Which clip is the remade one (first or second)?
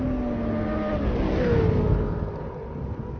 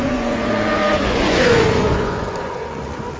second